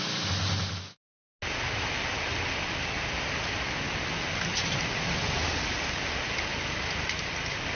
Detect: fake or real real